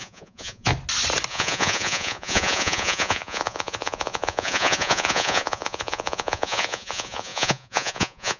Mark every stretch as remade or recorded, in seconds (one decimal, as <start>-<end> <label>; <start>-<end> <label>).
0.0-0.7 remade; 0.7-1.3 recorded; 1.3-8.4 remade